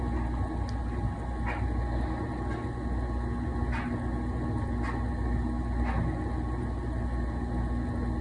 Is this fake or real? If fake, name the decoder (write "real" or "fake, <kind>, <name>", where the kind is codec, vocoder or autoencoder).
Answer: real